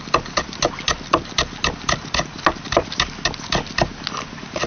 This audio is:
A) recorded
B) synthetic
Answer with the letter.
A